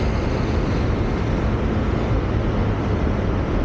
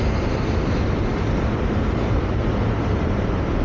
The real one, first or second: first